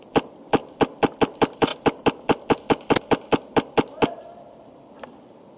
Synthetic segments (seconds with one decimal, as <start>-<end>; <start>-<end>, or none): none